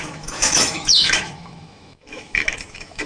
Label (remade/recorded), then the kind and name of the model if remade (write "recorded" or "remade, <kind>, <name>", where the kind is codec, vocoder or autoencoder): remade, autoencoder, DAC-VAE